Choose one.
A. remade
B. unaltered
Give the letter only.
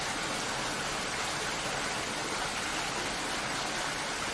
B